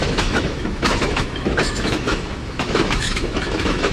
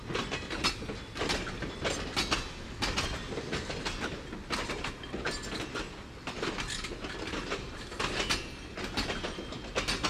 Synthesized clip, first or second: first